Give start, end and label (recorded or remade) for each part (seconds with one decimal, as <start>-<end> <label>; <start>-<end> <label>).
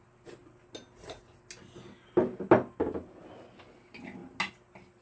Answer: 0.0-5.0 recorded